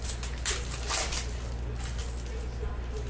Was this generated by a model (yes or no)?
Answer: no